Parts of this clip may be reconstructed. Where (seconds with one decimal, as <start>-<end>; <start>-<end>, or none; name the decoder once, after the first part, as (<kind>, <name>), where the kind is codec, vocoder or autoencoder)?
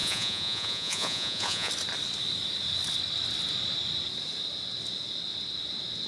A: 0.0-1.7 (vocoder, Vocos)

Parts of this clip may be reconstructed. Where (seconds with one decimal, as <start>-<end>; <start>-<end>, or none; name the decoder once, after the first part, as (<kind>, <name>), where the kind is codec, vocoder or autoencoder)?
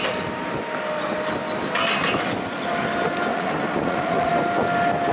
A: 3.3-4.3 (vocoder, Vocos)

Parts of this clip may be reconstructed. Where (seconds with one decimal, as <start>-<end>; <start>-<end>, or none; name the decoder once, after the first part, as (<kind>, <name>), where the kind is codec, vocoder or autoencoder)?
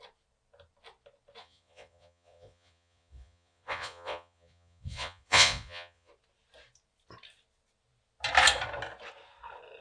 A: 1.4-6.1 (vocoder, Vocos)